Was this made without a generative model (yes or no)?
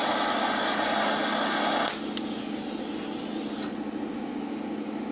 yes